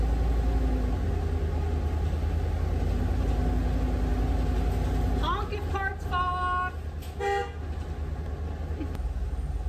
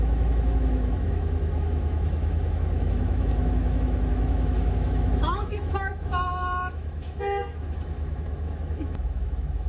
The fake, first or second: second